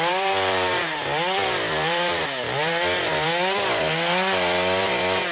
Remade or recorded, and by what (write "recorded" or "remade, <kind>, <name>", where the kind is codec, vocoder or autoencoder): remade, vocoder, BigVGAN v2